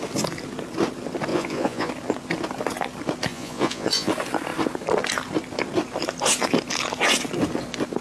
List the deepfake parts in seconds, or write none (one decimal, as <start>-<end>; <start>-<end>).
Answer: 1.3-1.9; 3.3-4.1